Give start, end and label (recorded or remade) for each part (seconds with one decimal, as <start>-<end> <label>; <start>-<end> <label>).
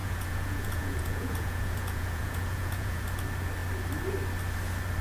0.0-3.0 remade; 3.0-5.0 recorded